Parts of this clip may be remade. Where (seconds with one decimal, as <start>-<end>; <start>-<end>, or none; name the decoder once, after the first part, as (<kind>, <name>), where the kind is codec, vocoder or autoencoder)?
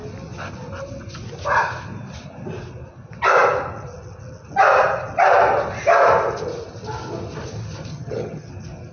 7.9-8.5 (vocoder, HiFi-GAN)